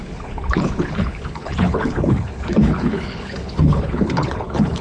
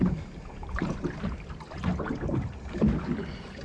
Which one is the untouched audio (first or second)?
second